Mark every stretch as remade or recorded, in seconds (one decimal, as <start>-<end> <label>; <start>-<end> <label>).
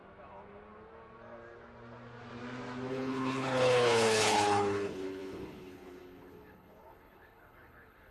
0.0-2.9 recorded; 2.9-8.1 remade